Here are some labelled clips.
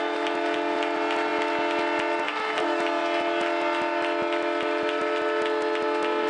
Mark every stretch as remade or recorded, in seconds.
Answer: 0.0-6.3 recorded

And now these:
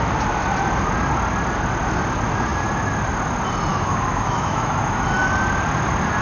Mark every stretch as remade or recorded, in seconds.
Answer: 0.0-3.7 recorded; 3.7-5.0 remade; 5.0-6.2 recorded

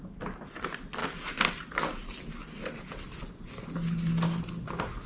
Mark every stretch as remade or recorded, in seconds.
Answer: 0.0-5.1 recorded

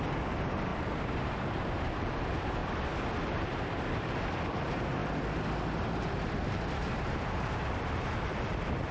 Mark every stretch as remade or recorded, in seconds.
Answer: 0.0-2.6 remade; 2.6-3.2 recorded; 3.2-5.0 remade; 5.0-6.0 recorded; 6.0-8.9 remade

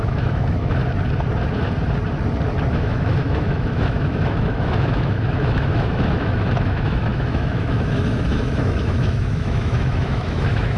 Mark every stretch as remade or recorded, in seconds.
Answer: 0.0-0.8 remade; 0.8-2.7 recorded; 2.7-10.8 remade

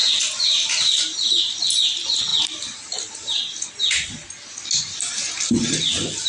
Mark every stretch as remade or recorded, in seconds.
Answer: 0.0-6.3 recorded